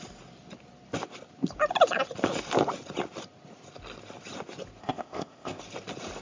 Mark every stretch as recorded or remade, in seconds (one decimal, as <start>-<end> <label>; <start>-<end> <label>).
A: 0.0-4.8 recorded; 4.8-5.6 remade; 5.6-6.2 recorded